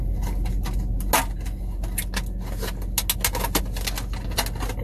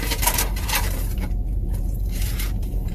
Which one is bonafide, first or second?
first